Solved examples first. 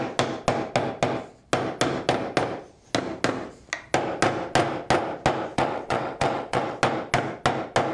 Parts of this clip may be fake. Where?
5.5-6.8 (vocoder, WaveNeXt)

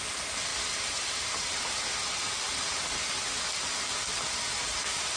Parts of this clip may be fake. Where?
none

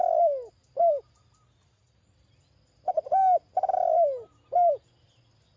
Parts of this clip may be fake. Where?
none

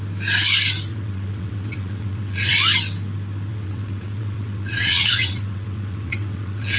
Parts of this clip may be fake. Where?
0.9-2.5 (vocoder, WaveNeXt); 3.5-6.8

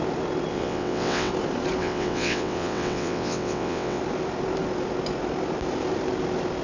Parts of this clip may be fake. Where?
0.5-1.3 (vocoder, WaveNeXt); 1.8-4.0

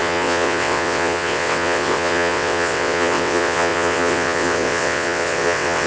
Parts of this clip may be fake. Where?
0.0-5.9 (vocoder, WaveNeXt)

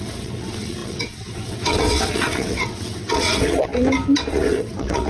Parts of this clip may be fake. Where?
0.0-3.7 (vocoder, WaveNeXt); 4.3-5.1